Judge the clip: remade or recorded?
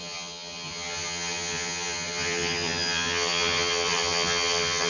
remade